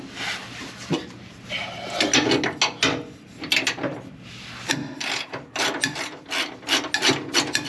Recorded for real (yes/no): yes